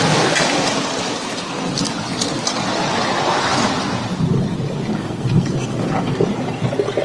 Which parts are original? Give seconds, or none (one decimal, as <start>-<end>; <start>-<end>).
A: 0.0-5.0; 6.2-7.0